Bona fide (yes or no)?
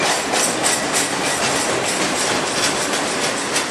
yes